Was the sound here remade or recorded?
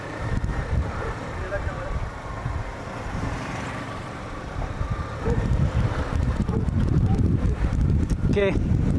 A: remade